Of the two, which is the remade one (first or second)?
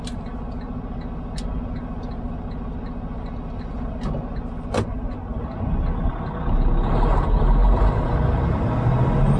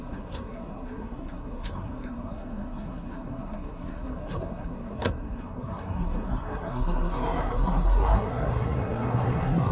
second